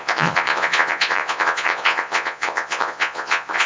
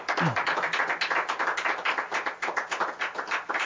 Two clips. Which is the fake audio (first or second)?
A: first